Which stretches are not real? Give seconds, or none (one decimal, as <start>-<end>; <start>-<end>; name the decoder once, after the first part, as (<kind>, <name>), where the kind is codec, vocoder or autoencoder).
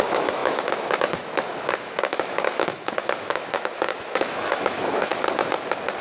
0.0-5.1 (autoencoder, DAC-VAE)